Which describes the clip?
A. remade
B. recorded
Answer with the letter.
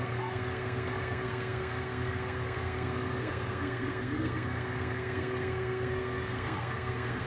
A